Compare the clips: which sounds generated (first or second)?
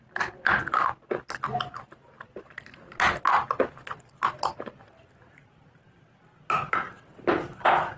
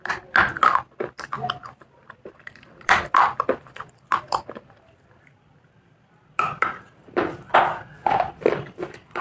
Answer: second